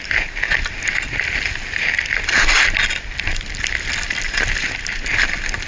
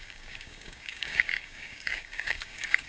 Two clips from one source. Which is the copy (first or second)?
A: second